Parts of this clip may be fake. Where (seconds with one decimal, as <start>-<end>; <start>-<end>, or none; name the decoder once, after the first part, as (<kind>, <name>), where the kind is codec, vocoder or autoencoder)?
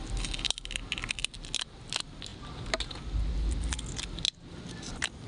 none